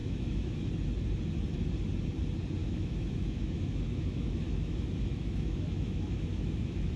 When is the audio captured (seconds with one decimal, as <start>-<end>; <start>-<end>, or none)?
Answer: 0.7-2.6

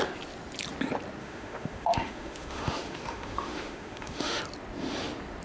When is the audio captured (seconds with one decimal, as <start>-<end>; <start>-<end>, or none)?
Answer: 0.0-1.2; 4.4-5.4

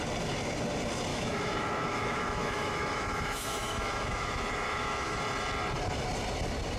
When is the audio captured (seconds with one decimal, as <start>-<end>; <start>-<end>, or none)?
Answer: 0.0-1.1; 5.2-6.8

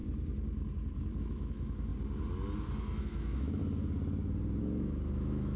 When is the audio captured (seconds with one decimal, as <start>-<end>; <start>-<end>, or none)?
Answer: 0.0-1.2; 1.9-3.0; 3.6-4.6

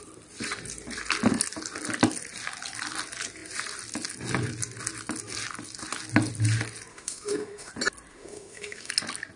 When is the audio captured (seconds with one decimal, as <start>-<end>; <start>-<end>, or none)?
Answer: 0.0-6.9; 7.7-8.1; 8.9-9.4